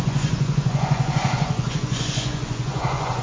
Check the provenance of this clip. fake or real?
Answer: fake